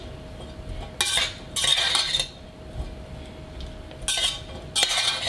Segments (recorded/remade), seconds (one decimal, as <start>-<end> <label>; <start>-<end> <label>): 0.0-5.3 recorded